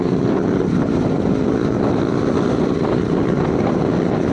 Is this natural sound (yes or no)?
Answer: yes